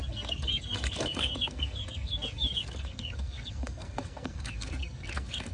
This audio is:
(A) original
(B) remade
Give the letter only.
B